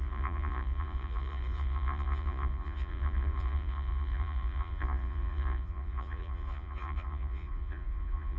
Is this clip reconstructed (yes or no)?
yes